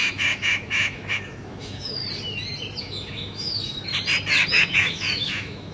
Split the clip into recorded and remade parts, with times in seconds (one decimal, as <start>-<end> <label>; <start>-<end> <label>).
0.0-2.0 remade; 2.0-2.8 recorded; 2.8-3.9 remade; 3.9-4.5 recorded; 4.5-5.7 remade